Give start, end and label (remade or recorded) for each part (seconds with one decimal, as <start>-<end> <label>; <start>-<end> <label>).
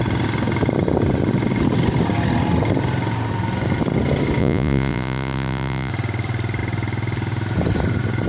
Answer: 0.0-4.4 recorded; 4.4-5.9 remade; 5.9-8.3 recorded